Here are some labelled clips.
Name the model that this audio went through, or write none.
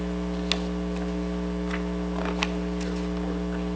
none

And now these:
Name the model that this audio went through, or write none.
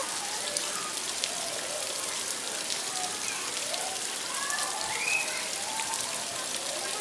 vocoder, BigVGAN v2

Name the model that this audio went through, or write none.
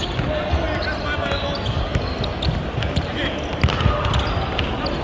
none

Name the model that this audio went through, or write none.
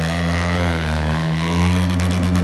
codec, SNAC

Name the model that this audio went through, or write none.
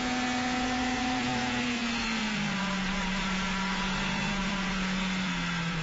vocoder, Vocos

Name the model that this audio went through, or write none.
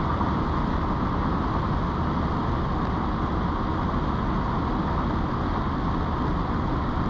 none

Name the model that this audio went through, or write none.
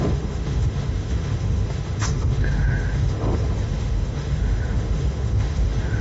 autoencoder, DAC-VAE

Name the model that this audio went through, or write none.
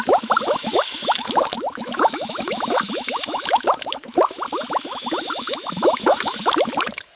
autoencoder, DAC-VAE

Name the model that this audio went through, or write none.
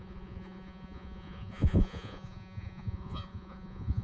vocoder, Vocos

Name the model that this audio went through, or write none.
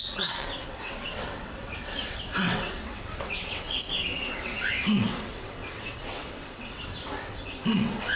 vocoder, WaveNeXt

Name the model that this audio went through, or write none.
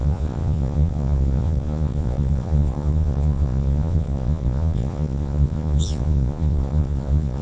vocoder, Vocos